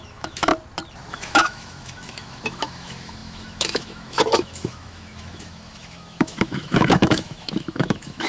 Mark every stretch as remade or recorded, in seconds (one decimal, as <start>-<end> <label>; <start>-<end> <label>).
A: 0.0-0.5 remade; 0.5-1.1 recorded; 1.1-8.3 remade

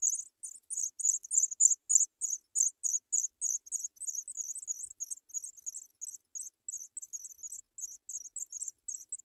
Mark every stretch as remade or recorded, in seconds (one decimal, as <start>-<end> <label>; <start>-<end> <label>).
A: 0.0-9.2 recorded

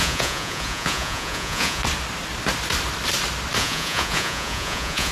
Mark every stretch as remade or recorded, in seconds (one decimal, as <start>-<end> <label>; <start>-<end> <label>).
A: 0.0-1.8 remade; 1.8-3.6 recorded; 3.6-5.1 remade

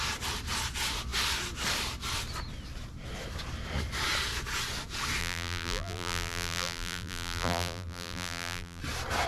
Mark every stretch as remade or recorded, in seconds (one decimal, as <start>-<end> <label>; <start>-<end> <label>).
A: 0.0-5.2 recorded; 5.2-8.8 remade; 8.8-9.3 recorded

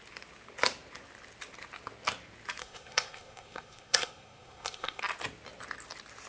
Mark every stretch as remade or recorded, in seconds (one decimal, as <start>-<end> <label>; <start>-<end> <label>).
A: 0.0-2.6 recorded; 2.6-5.0 remade; 5.0-6.3 recorded

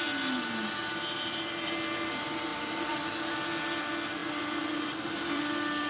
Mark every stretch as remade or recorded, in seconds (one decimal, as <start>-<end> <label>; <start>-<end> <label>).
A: 0.0-2.5 recorded; 2.5-3.1 remade; 3.1-4.2 recorded; 4.2-5.4 remade; 5.4-5.9 recorded